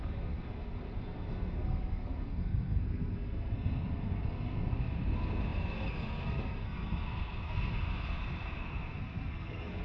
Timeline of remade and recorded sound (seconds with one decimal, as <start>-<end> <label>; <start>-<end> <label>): 0.0-9.8 remade